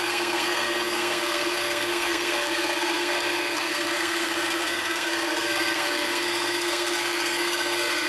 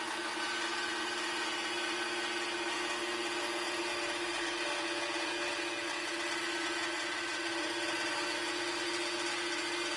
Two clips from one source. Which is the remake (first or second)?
first